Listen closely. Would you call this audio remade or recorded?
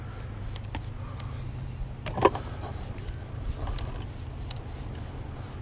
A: recorded